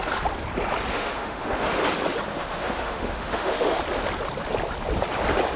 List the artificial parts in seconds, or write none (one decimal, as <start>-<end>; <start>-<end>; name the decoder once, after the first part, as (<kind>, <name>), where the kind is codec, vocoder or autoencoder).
0.9-1.8 (autoencoder, DAC-VAE); 2.3-3.8